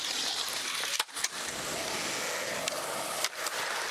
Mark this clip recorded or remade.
recorded